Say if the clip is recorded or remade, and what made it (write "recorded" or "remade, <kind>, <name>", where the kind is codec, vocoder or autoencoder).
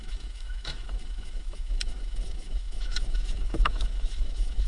remade, autoencoder, DAC-VAE